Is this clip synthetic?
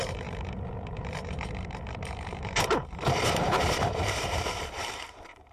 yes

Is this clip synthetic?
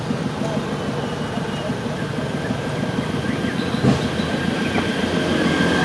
no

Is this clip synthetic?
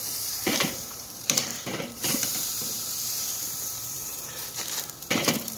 yes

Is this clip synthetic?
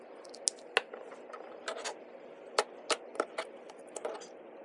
no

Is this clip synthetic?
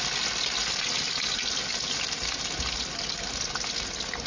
no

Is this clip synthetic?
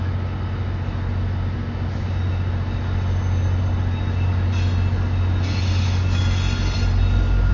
no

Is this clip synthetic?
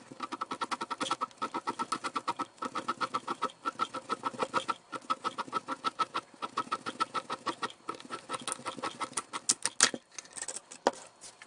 no